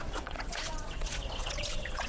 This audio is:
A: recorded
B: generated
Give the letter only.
B